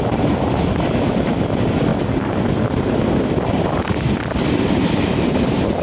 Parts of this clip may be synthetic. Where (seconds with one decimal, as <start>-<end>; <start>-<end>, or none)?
none